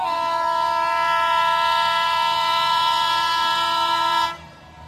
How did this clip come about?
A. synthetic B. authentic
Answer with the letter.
A